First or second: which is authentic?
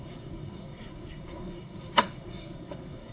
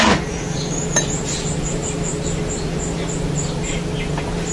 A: second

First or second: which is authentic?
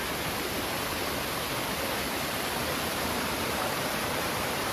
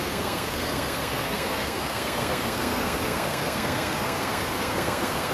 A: first